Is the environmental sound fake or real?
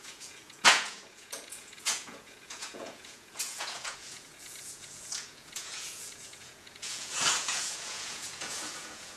fake